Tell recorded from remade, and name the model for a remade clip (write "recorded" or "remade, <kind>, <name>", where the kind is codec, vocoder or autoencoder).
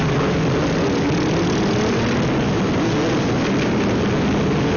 recorded